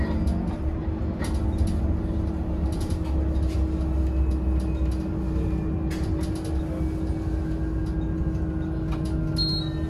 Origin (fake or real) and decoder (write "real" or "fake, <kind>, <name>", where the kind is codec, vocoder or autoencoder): real